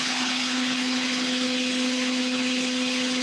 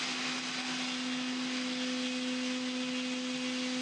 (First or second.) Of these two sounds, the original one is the second